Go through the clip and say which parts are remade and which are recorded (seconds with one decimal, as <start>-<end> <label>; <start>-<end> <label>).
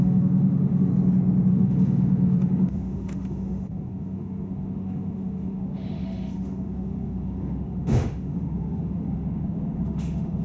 0.0-0.9 remade; 0.9-1.5 recorded; 1.5-10.4 remade